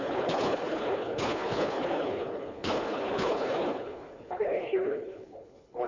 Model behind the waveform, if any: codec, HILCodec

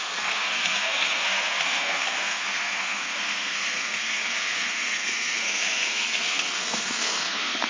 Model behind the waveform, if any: codec, SNAC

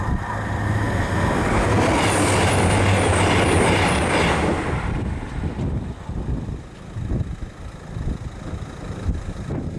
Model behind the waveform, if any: none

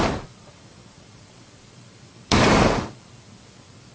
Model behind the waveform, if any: vocoder, BigVGAN v2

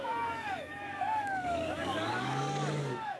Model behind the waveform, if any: codec, DAC